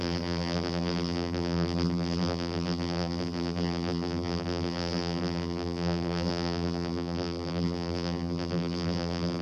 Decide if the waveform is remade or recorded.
remade